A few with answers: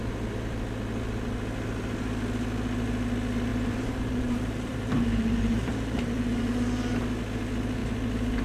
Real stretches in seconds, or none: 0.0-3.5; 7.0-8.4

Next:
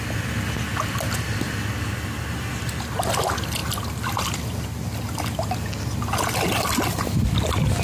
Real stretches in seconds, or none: 0.0-7.8

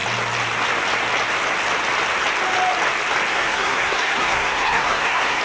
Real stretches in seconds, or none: 0.0-3.3